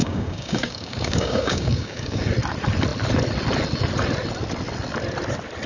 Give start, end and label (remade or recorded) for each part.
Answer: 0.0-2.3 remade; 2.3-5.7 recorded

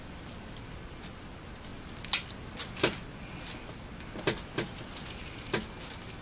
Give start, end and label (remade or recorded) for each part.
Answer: 0.0-6.2 recorded

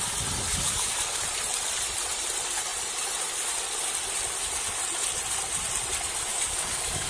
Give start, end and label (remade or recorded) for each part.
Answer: 0.0-0.5 recorded; 0.5-1.2 remade; 1.2-6.3 recorded; 6.3-7.1 remade